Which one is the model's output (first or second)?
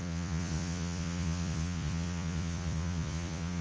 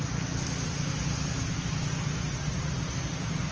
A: first